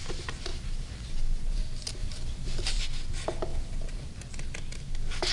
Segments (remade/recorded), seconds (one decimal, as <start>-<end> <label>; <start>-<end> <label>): 0.0-0.5 recorded; 0.5-1.6 remade; 1.6-2.0 recorded; 2.0-2.8 remade; 2.8-3.5 recorded; 3.5-4.1 remade; 4.1-5.3 recorded